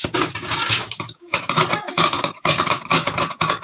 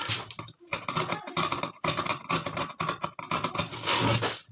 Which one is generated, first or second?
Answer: first